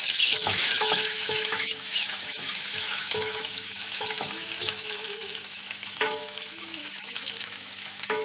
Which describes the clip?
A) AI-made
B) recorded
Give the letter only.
A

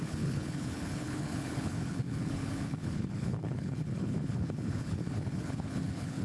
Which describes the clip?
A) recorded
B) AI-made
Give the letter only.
B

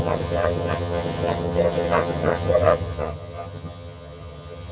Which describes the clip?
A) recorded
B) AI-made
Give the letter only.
B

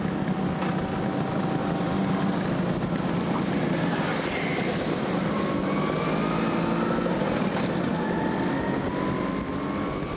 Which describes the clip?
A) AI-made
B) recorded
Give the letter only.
B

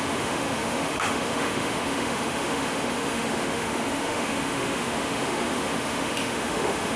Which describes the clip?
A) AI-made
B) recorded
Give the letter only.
A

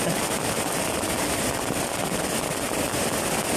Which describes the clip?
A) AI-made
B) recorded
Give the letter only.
B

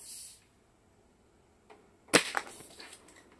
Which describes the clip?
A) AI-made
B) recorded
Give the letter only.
B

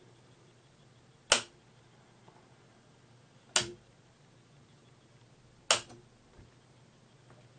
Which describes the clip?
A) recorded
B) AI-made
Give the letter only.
A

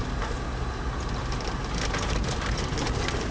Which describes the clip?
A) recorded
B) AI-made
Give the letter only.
A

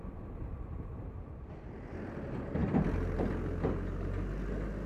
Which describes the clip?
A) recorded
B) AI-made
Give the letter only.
A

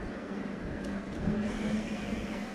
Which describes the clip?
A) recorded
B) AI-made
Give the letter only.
B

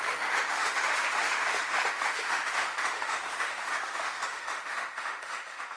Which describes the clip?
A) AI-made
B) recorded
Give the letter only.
A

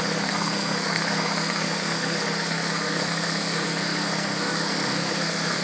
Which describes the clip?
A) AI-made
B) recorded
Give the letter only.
A